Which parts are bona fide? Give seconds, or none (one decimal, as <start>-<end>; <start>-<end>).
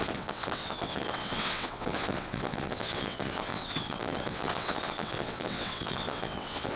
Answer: none